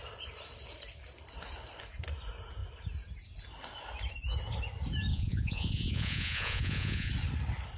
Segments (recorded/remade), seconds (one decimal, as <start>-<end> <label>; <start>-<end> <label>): 0.0-5.1 recorded; 5.1-7.1 remade; 7.1-7.8 recorded